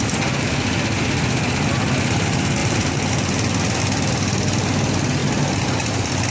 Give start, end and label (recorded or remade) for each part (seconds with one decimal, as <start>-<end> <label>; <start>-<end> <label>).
0.0-2.6 recorded; 2.6-3.8 remade; 3.8-6.3 recorded